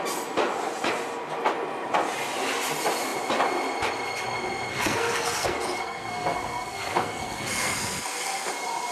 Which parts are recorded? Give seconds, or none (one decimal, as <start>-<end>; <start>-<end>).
0.0-4.7; 8.5-8.9